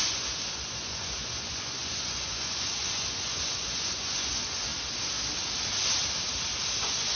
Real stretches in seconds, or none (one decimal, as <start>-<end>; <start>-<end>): 4.7-6.8